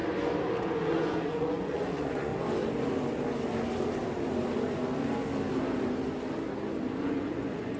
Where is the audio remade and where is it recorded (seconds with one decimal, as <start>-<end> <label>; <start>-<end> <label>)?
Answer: 0.0-0.6 recorded; 0.6-2.3 remade; 2.3-7.0 recorded; 7.0-7.8 remade